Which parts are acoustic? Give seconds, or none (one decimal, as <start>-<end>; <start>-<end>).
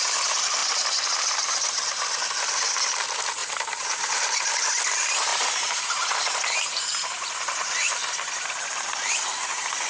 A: 0.0-3.4; 4.4-5.3; 7.7-9.9